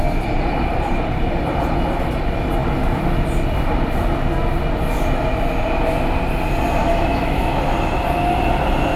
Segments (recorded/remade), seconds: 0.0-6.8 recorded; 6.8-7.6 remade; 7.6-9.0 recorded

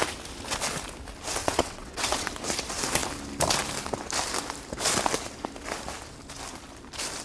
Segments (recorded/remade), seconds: 0.0-1.4 recorded; 1.4-2.3 remade; 2.3-7.2 recorded

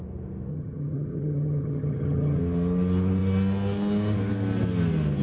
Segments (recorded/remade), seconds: 0.0-0.5 recorded; 0.5-2.4 remade; 2.4-5.2 recorded

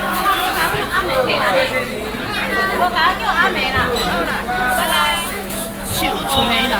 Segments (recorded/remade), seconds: 0.0-1.6 remade; 1.6-5.3 recorded; 5.3-6.8 remade